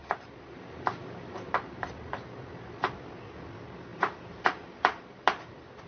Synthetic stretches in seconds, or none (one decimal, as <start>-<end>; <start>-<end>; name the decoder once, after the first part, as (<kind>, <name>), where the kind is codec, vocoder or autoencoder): 0.0-1.9 (vocoder, BigVGAN v2); 3.9-5.5